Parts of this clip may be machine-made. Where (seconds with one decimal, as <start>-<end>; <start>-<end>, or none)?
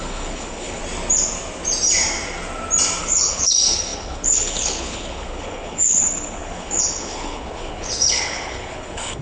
0.0-0.8; 3.0-9.2